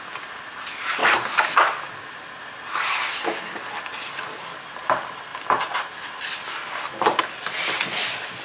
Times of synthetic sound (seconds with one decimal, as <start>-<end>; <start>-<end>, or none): none